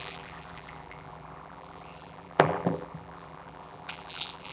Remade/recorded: remade